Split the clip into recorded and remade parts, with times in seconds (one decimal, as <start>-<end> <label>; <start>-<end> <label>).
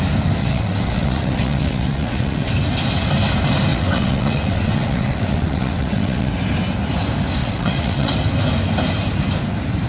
0.0-0.4 recorded; 0.4-2.5 remade; 2.5-3.7 recorded; 3.7-6.3 remade; 6.3-7.4 recorded; 7.4-8.1 remade; 8.1-9.9 recorded